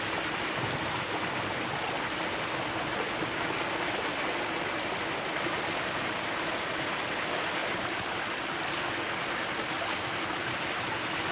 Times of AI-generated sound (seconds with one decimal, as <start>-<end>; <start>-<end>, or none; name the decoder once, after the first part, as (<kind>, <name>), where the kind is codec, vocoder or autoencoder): 7.6-8.3 (vocoder, BigVGAN v2)